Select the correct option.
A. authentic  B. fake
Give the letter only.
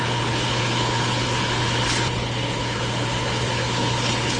B